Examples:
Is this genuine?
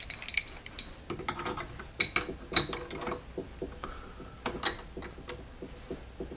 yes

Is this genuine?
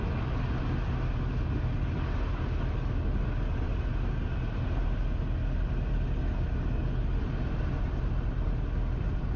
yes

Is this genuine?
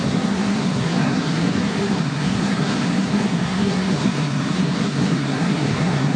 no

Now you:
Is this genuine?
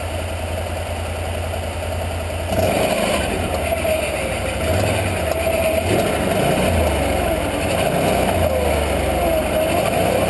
yes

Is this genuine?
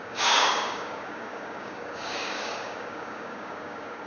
no